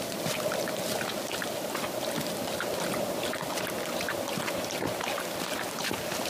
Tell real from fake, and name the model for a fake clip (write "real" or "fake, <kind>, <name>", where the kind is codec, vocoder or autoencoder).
real